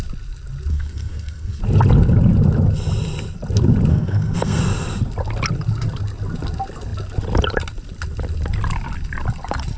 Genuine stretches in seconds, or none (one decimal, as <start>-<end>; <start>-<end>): 0.0-0.7; 1.6-3.9; 4.6-9.8